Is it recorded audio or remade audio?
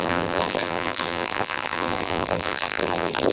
remade